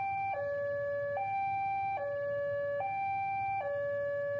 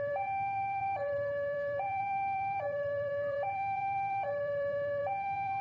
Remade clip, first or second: second